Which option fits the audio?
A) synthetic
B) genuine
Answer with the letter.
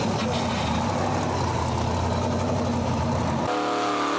B